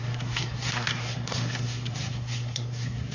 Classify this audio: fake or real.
fake